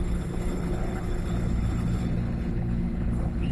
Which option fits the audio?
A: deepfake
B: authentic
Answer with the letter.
A